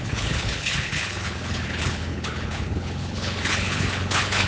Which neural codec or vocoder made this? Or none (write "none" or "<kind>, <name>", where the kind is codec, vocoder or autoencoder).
codec, HILCodec